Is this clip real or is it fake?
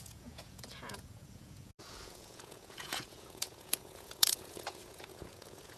fake